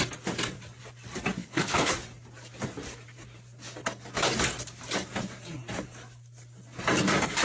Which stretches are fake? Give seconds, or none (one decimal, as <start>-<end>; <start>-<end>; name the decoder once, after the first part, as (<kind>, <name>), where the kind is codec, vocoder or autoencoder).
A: 1.4-1.9 (codec, HILCodec)